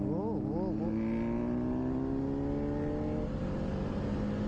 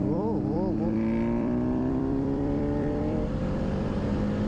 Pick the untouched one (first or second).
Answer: first